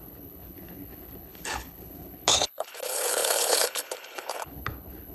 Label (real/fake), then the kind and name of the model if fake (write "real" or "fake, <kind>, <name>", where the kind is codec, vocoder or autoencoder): fake, codec, HILCodec